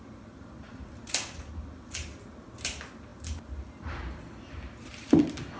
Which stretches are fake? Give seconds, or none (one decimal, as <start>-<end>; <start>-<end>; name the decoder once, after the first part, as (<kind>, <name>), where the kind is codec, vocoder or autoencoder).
none